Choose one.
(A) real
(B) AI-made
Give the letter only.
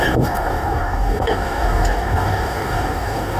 B